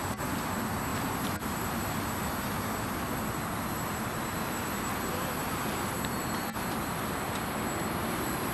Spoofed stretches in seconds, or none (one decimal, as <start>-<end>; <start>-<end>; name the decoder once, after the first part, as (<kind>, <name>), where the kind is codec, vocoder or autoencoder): none